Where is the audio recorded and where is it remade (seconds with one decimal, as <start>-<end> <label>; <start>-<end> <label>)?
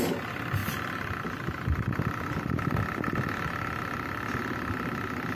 0.0-5.4 recorded